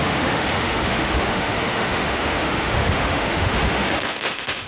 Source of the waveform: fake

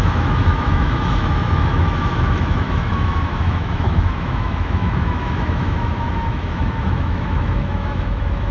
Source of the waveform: fake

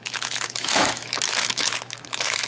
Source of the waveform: fake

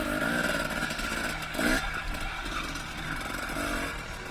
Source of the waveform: real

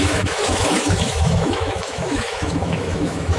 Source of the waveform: fake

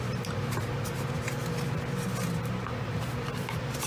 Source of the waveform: real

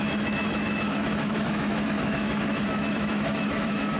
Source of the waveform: fake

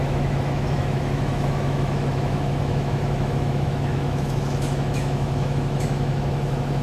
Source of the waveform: fake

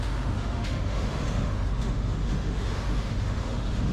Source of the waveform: fake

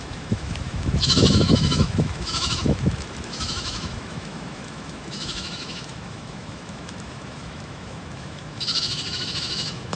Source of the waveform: fake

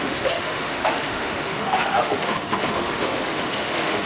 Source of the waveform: fake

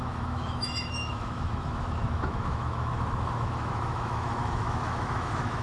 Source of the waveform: fake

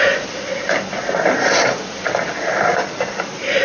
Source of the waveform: real